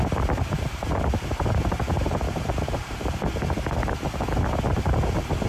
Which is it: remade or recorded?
recorded